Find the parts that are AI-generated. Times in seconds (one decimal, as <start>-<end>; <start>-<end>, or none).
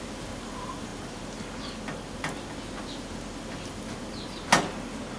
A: none